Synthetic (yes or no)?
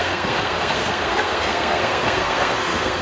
yes